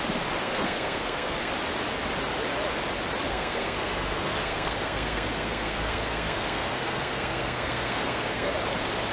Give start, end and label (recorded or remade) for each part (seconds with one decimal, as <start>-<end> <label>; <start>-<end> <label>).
0.0-0.4 recorded; 0.4-1.5 remade; 1.5-3.3 recorded; 3.3-8.5 remade; 8.5-9.1 recorded

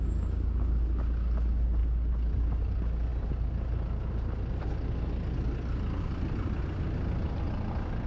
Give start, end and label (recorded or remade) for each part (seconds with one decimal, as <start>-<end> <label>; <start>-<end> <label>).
0.0-8.1 recorded

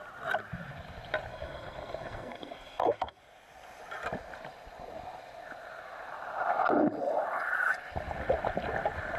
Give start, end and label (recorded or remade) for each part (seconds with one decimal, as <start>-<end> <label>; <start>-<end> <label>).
0.0-1.3 recorded; 1.3-3.2 remade; 3.2-9.2 recorded